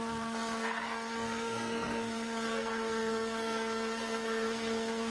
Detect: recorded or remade remade